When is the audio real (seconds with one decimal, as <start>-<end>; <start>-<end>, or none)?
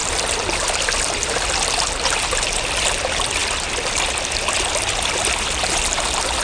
0.0-6.4